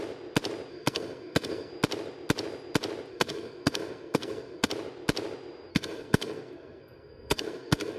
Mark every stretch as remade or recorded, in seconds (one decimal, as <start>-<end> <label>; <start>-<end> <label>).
0.0-0.7 recorded; 0.7-1.7 remade; 1.7-3.1 recorded; 3.1-4.7 remade; 4.7-5.7 recorded; 5.7-8.0 remade